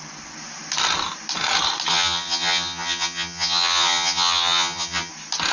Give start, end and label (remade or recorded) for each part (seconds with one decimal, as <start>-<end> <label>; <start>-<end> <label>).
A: 0.0-1.9 recorded; 1.9-5.1 remade; 5.1-5.5 recorded